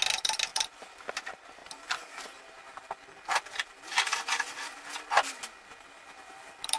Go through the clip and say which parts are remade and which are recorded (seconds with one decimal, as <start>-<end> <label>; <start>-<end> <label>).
0.0-0.5 recorded; 0.5-1.1 remade; 1.1-2.8 recorded; 2.8-4.9 remade; 4.9-6.8 recorded